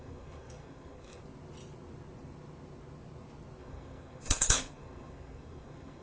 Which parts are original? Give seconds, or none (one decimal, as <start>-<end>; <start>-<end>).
1.2-3.6